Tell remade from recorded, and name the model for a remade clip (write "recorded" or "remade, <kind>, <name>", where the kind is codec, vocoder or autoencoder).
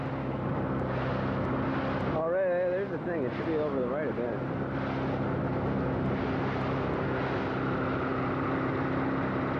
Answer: recorded